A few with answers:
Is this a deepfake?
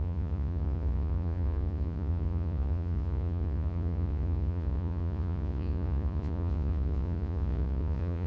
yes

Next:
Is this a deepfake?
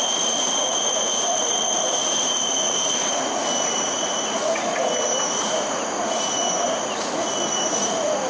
yes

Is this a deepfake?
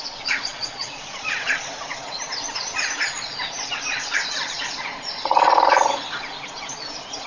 yes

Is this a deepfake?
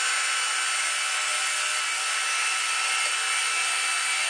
no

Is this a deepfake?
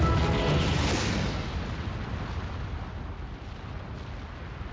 no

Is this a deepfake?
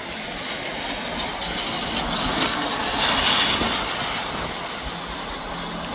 no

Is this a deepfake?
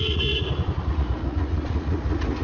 yes